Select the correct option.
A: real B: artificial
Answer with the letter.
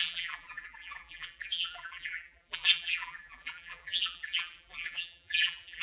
B